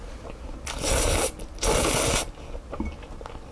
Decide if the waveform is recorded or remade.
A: recorded